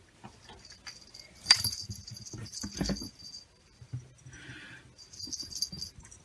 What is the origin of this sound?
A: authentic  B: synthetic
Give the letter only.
A